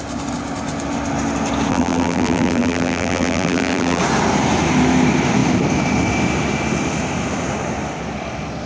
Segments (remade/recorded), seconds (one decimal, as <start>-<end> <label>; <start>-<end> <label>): 0.0-1.7 recorded; 1.7-4.0 remade; 4.0-8.7 recorded